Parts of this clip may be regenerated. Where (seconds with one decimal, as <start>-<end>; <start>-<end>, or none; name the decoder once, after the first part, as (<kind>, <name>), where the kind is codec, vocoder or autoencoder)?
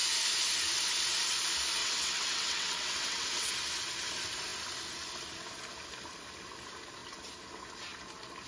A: 1.8-3.5 (vocoder, WaveNeXt)